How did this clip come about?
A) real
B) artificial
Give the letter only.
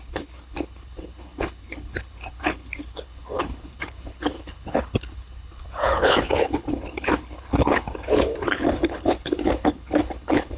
B